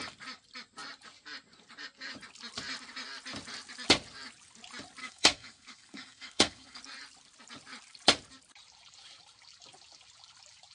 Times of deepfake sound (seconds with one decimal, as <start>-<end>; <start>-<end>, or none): 5.0-6.8